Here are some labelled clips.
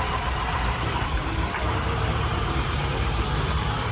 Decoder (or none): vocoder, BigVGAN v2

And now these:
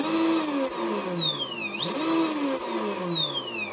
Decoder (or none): none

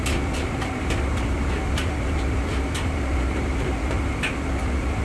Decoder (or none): vocoder, BigVGAN v2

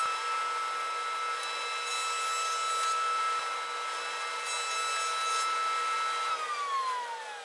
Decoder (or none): none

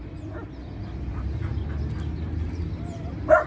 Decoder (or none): none